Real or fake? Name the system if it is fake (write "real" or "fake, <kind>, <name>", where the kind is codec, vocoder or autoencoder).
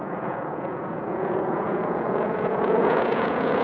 fake, vocoder, Vocos